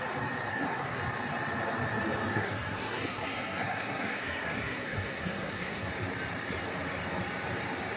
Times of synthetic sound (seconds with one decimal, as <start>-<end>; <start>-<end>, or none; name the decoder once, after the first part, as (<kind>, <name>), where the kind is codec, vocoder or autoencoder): 0.5-1.0 (codec, SNAC); 2.3-5.9